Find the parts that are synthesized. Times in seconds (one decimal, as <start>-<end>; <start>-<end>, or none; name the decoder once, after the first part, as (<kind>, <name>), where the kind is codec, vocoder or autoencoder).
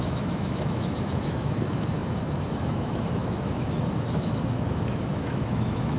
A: 0.0-6.0 (autoencoder, DAC-VAE)